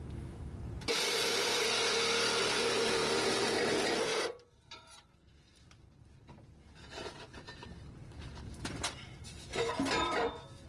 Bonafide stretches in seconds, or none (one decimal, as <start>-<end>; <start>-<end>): 1.6-2.4

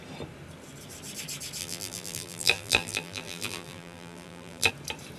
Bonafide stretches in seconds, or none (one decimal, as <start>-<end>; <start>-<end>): 0.0-1.6; 4.7-5.2

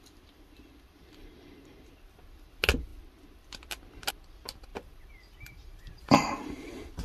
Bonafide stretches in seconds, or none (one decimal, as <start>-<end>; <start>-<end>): 0.0-1.0; 1.8-4.7; 6.5-7.0

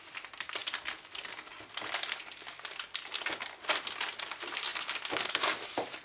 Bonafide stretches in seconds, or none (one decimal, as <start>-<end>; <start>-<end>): 0.0-6.0

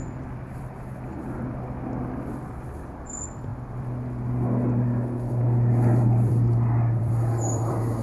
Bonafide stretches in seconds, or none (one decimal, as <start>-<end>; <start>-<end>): none

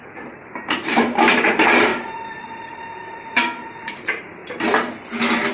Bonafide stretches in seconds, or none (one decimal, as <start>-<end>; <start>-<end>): 4.4-5.5